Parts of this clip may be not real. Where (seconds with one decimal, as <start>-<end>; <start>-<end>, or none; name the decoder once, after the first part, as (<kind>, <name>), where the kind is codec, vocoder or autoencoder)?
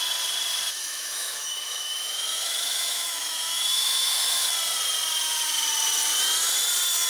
0.8-4.5 (autoencoder, DAC-VAE)